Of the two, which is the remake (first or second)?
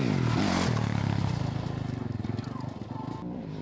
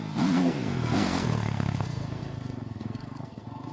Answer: second